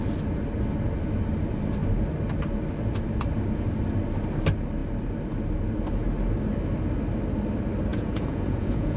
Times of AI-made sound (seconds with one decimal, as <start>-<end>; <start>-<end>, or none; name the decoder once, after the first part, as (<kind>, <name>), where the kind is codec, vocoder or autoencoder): 7.9-9.0 (vocoder, Vocos)